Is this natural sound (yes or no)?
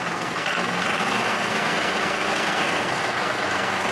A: no